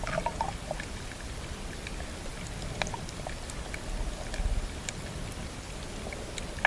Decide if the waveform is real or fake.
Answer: real